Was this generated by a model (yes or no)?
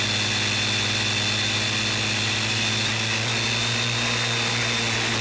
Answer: no